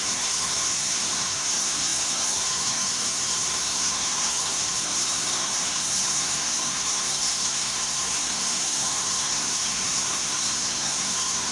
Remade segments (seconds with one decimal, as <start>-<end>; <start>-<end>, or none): 0.0-11.5